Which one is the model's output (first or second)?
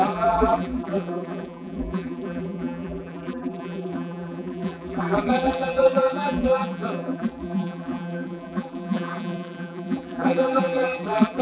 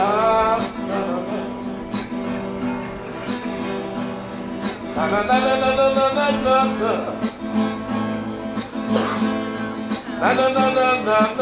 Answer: first